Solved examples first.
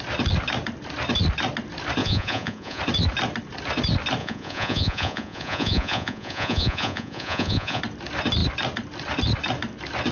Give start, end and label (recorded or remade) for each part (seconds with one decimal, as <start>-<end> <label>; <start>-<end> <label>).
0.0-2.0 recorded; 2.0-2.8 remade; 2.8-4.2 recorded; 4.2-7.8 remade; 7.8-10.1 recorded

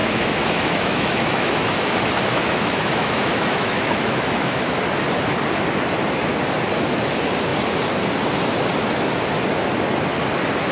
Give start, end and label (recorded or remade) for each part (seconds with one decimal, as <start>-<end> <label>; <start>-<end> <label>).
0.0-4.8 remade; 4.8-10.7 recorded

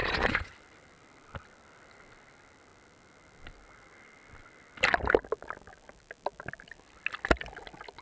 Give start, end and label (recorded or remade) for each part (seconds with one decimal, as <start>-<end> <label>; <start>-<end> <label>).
0.0-0.5 remade; 0.5-8.0 recorded

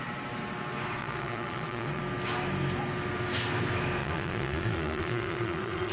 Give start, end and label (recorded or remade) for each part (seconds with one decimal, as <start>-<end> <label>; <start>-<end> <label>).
0.0-1.0 recorded; 1.0-2.0 remade; 2.0-4.0 recorded; 4.0-5.9 remade

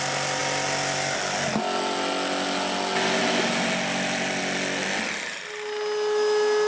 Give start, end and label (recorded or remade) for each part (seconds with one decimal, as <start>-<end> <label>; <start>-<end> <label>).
0.0-6.7 recorded

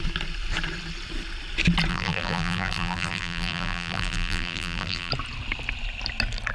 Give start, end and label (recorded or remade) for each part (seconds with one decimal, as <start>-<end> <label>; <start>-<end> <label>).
0.0-1.9 recorded; 1.9-5.1 remade; 5.1-6.5 recorded

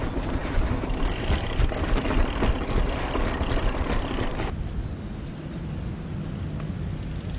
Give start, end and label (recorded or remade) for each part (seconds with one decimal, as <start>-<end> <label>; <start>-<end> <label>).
0.0-7.4 recorded